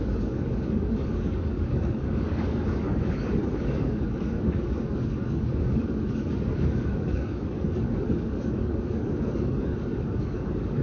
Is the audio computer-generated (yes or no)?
yes